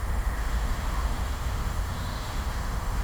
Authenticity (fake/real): fake